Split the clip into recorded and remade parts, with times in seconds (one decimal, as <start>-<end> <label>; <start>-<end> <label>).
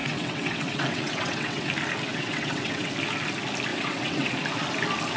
0.0-1.7 remade; 1.7-2.1 recorded; 2.1-2.9 remade; 2.9-3.7 recorded; 3.7-4.3 remade; 4.3-5.2 recorded